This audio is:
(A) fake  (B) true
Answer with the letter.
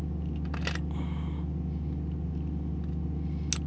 B